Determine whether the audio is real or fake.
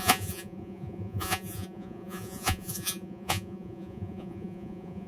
fake